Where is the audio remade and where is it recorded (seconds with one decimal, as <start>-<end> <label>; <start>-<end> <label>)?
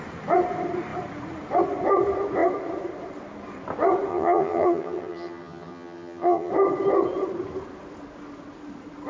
0.0-4.1 recorded; 4.1-6.5 remade; 6.5-9.1 recorded